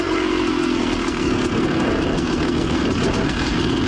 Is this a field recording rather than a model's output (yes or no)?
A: no